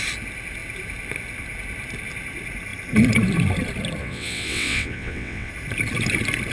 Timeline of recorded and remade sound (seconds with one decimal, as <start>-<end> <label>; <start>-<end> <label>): 0.0-4.0 recorded; 4.0-5.5 remade; 5.5-6.5 recorded